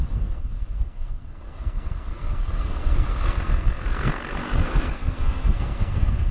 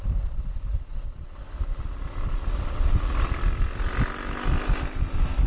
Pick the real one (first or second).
second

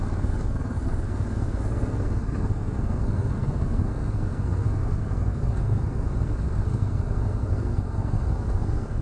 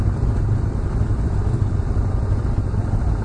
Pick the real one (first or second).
second